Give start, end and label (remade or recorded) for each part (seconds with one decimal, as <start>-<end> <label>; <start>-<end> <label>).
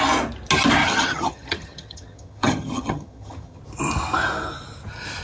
0.0-0.8 recorded; 0.8-3.6 remade; 3.6-5.2 recorded